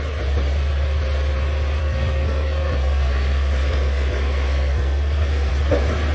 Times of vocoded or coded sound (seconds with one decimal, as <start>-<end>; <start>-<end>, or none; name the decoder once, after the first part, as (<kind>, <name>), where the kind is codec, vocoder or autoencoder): 1.8-5.5 (codec, SNAC)